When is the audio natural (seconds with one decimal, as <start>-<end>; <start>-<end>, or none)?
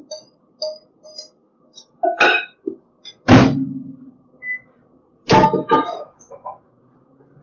0.0-1.4; 2.8-5.3; 6.8-7.4